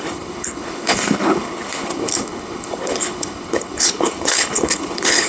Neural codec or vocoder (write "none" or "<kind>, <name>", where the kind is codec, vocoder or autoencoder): codec, HILCodec